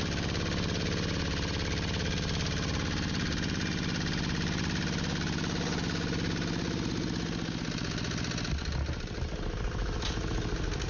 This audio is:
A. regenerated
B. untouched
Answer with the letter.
B